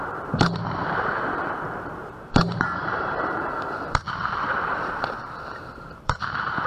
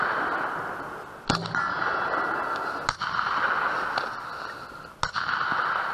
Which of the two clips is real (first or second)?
second